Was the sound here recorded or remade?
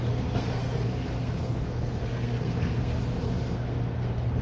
remade